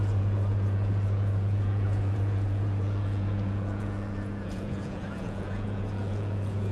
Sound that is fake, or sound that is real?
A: fake